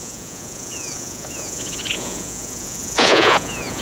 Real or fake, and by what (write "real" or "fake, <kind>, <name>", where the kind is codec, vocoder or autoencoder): fake, vocoder, Vocos